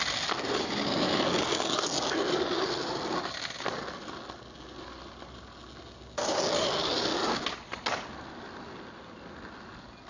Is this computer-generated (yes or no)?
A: no